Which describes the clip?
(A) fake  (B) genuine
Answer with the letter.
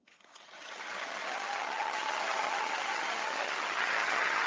A